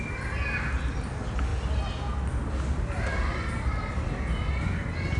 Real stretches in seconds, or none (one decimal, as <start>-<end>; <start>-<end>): 0.0-5.2